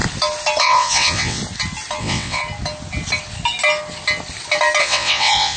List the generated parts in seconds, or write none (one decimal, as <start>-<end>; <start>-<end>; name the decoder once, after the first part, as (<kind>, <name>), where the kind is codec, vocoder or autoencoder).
0.6-1.4 (vocoder, WaveNeXt); 2.0-2.4; 4.8-5.6